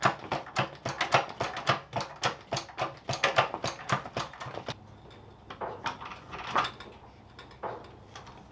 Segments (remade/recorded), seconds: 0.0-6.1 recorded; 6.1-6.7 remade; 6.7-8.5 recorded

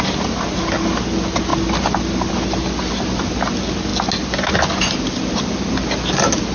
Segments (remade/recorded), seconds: 0.0-6.5 recorded

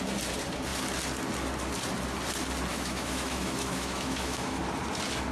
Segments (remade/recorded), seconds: 0.0-2.7 recorded; 2.7-4.6 remade; 4.6-5.3 recorded